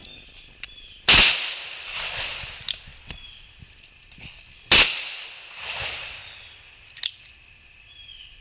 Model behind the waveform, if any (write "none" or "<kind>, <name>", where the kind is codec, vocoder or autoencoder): none